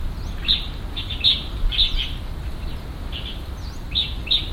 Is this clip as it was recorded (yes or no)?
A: yes